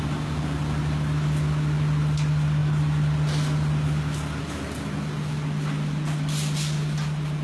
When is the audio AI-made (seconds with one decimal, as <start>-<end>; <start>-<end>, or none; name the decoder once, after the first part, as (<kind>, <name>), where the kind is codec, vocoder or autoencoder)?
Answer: none